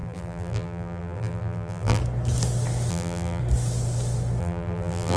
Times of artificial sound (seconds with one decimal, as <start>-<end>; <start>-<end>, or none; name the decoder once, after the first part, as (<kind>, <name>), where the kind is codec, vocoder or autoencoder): 0.0-2.0 (vocoder, BigVGAN v2); 2.9-3.4; 4.4-5.2